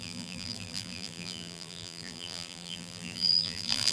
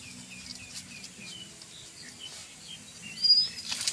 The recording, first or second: second